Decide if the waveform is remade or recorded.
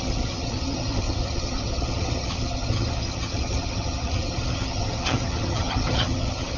remade